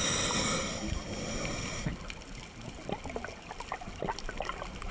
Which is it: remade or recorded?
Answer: recorded